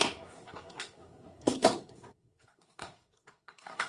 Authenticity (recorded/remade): remade